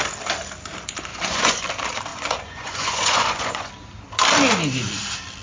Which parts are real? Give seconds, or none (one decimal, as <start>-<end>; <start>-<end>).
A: 0.0-1.1; 1.6-2.1; 3.7-5.4